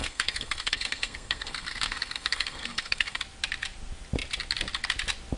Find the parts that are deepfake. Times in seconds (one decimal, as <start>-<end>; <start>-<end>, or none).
0.0-3.2